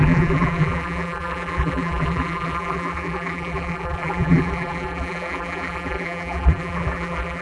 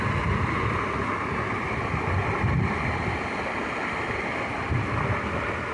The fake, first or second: first